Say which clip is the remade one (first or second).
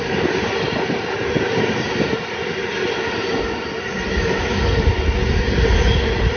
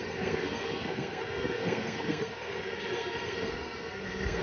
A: second